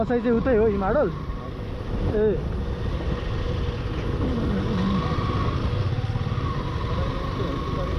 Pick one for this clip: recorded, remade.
recorded